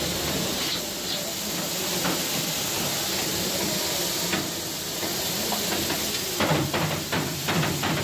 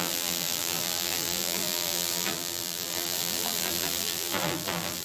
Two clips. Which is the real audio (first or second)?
first